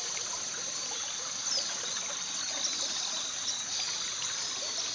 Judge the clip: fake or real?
real